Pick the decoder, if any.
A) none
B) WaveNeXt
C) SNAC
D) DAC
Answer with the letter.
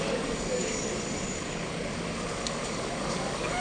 D